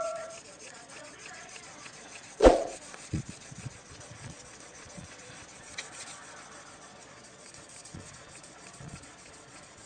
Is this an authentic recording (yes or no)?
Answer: no